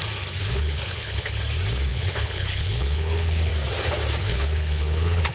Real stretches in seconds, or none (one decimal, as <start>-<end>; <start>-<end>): 0.0-0.4; 1.4-1.9; 3.5-4.2